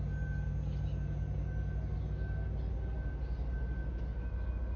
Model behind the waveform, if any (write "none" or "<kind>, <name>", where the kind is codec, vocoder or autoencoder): none